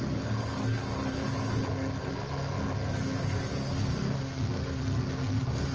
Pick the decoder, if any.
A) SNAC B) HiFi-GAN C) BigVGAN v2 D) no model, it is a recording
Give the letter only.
D